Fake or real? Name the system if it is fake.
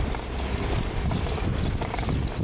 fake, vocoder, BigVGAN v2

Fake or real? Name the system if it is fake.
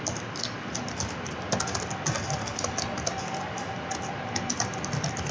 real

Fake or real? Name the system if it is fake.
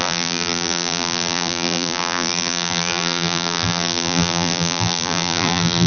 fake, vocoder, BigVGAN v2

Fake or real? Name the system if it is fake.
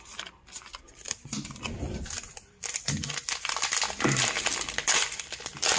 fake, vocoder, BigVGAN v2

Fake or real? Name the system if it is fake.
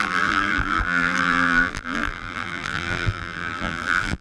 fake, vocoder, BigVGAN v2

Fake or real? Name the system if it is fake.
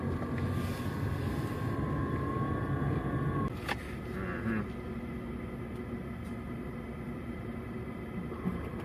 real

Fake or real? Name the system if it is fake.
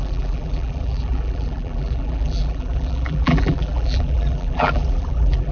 fake, vocoder, BigVGAN v2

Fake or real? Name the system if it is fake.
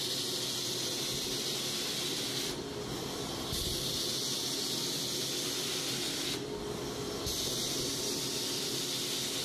real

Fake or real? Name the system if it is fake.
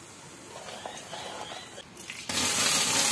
real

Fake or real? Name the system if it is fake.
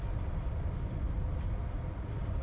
fake, vocoder, BigVGAN v2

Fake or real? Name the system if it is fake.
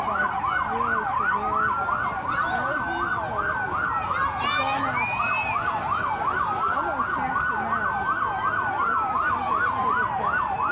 real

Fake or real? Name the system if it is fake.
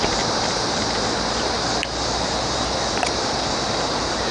fake, vocoder, BigVGAN v2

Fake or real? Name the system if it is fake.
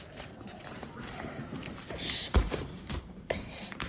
fake, vocoder, BigVGAN v2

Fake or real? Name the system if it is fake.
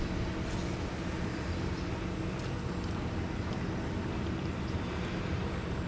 real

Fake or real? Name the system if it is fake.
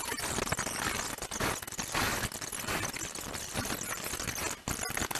real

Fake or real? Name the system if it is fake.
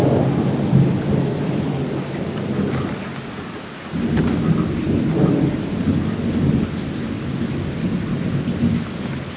real